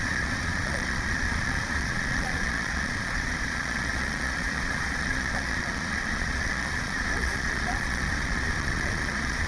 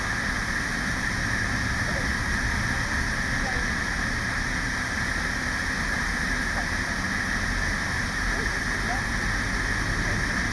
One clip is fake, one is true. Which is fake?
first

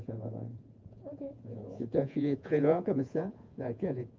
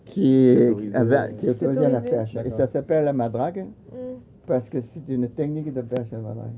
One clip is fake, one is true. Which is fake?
first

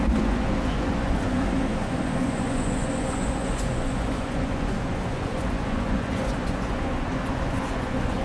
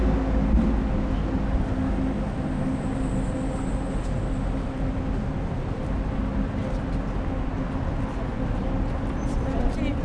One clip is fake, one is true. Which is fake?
first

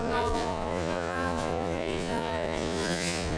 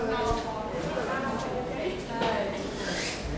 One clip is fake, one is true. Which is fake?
first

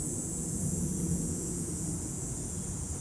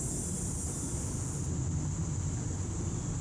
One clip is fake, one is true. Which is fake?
first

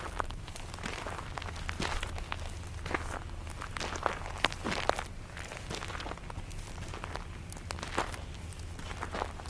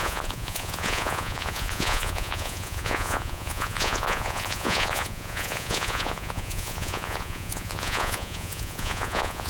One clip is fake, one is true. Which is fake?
second